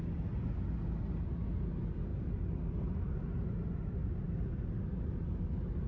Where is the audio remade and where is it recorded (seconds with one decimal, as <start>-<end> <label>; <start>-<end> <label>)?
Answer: 0.0-2.1 recorded; 2.1-3.0 remade; 3.0-5.9 recorded